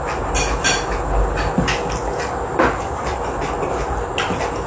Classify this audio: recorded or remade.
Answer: recorded